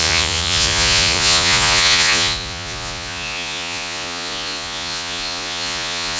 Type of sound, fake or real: fake